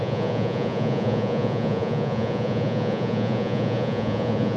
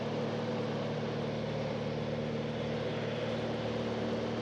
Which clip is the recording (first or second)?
second